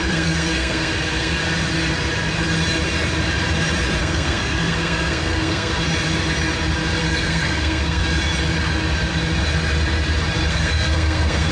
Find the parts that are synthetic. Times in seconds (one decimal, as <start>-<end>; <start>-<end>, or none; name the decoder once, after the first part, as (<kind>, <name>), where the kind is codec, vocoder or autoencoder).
0.0-1.4 (codec, SNAC); 4.0-5.7; 7.0-8.0; 10.5-11.5